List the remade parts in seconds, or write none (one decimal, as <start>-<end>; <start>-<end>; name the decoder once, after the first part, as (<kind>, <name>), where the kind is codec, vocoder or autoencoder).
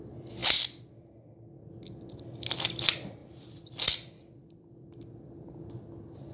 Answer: none